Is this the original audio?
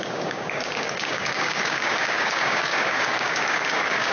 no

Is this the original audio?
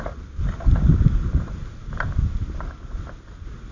yes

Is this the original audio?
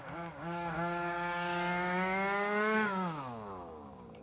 no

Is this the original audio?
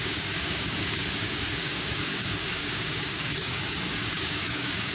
no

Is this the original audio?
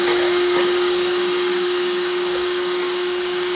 no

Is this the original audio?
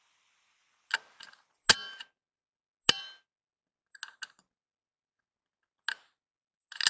yes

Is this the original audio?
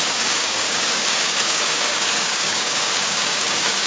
no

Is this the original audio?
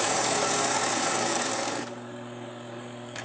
no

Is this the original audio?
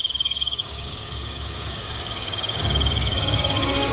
no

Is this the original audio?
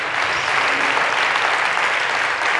yes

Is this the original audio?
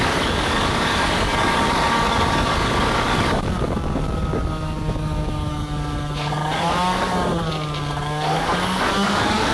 no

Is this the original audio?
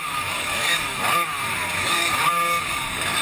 no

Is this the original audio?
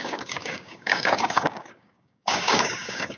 no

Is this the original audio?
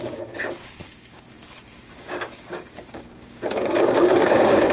no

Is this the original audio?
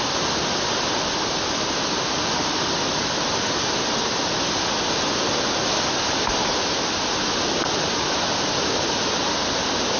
yes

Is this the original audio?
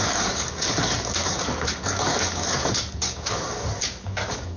no